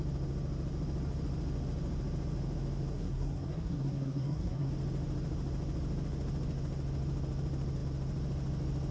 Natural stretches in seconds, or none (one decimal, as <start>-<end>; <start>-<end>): 0.0-2.9; 4.7-8.9